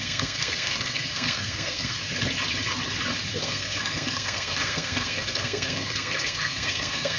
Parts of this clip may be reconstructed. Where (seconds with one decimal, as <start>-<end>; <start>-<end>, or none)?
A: 0.0-2.0; 3.3-7.2